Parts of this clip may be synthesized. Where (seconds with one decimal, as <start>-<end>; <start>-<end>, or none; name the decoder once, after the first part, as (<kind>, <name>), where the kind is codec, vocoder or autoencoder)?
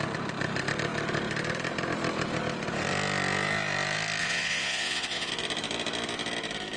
4.2-5.3 (vocoder, Vocos)